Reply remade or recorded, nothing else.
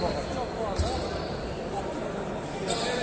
recorded